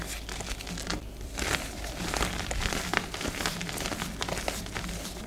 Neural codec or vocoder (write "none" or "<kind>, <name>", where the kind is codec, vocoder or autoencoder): none